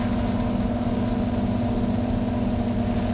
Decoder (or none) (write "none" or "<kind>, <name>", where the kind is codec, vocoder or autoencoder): none